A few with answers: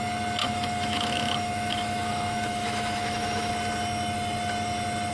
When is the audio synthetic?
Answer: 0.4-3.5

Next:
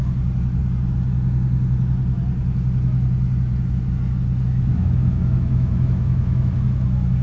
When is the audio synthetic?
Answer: 4.7-6.5

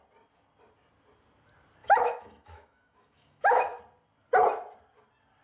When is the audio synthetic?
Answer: 1.8-3.8

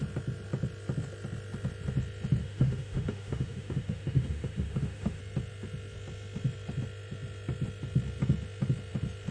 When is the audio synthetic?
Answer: 2.4-5.2

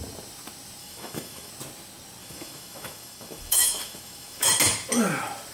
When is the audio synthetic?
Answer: 0.8-1.5; 2.2-4.5

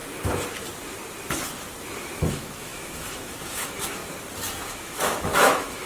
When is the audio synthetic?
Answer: 2.3-4.0; 4.7-5.9

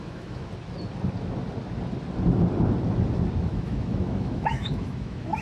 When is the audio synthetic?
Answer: 0.0-0.5; 3.4-5.4

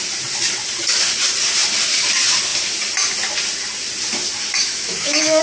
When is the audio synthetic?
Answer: 4.6-5.4